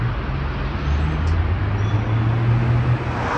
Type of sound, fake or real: real